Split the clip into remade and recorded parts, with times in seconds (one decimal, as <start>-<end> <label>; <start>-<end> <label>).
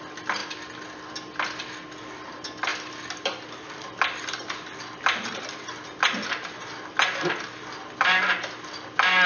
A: 0.0-2.7 recorded; 2.7-5.4 remade; 5.4-9.3 recorded